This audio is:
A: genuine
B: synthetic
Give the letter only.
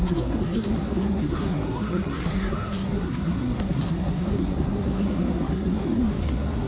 B